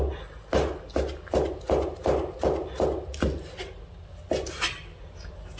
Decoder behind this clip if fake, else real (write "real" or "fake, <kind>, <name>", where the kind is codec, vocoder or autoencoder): real